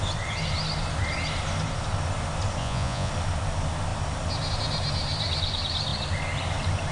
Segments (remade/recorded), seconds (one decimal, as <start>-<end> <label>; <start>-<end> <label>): 0.0-2.6 recorded; 2.6-3.1 remade; 3.1-6.9 recorded